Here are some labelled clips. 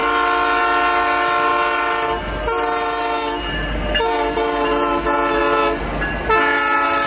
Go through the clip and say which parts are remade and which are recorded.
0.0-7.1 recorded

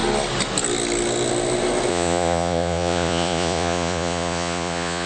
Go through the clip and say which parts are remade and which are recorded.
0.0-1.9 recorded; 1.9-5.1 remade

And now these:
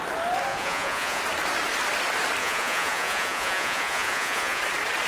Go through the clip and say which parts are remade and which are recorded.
0.0-0.5 recorded; 0.5-1.2 remade; 1.2-2.4 recorded; 2.4-4.6 remade; 4.6-5.1 recorded

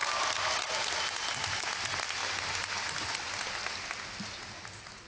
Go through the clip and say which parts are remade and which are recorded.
0.0-5.1 recorded

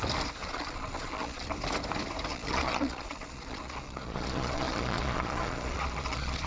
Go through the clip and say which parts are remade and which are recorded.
0.0-0.4 recorded; 0.4-1.5 remade; 1.5-2.3 recorded; 2.3-6.5 remade

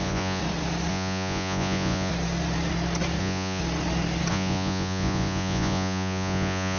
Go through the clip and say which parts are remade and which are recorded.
0.0-0.4 remade; 0.4-0.9 recorded; 0.9-2.1 remade; 2.1-3.2 recorded; 3.2-3.6 remade; 3.6-4.3 recorded; 4.3-6.8 remade